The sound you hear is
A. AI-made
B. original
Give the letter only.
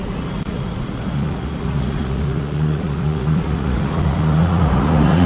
A